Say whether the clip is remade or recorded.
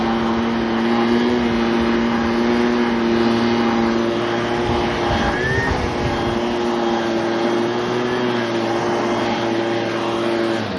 recorded